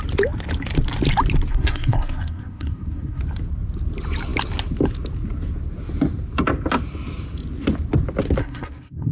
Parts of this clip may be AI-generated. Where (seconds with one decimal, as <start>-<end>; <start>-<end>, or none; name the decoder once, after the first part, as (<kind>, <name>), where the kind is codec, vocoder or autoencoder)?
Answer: 1.5-3.2 (codec, SNAC); 8.4-9.1